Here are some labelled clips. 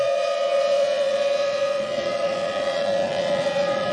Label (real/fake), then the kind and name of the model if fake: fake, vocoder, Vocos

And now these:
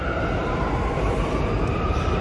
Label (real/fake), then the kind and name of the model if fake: real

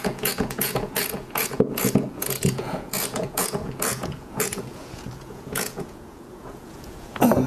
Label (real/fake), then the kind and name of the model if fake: fake, vocoder, Vocos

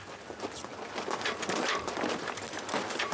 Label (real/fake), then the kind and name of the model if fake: real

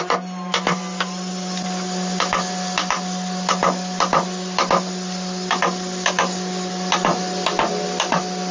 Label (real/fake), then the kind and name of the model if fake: real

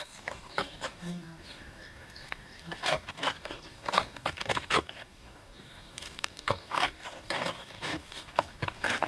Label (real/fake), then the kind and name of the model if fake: fake, codec, DAC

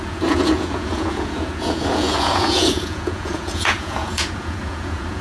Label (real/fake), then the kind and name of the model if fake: fake, vocoder, Vocos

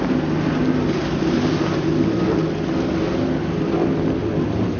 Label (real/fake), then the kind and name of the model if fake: real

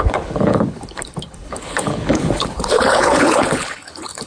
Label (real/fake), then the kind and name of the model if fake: fake, codec, HILCodec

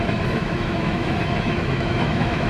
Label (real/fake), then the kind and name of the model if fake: fake, autoencoder, DAC-VAE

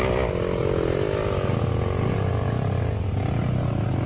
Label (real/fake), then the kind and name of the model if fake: real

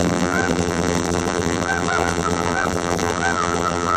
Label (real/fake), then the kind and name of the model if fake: fake, vocoder, BigVGAN v2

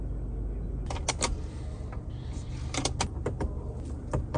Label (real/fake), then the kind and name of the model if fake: real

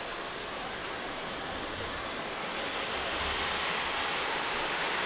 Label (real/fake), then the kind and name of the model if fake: real